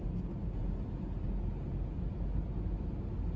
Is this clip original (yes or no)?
yes